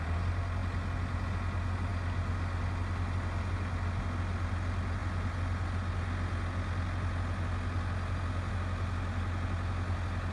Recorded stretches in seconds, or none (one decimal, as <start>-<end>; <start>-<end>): 0.0-10.3